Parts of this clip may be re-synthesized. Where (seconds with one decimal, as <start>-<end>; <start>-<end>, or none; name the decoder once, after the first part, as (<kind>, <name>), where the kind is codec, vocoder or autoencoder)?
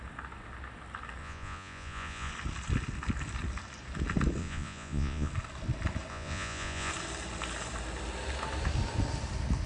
1.2-2.3 (vocoder, Vocos); 4.4-5.3; 6.1-6.9